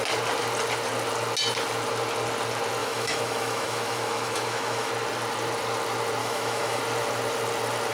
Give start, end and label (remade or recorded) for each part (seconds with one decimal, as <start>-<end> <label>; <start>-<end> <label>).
0.0-2.8 recorded; 2.8-4.9 remade; 4.9-6.2 recorded; 6.2-6.8 remade; 6.8-7.9 recorded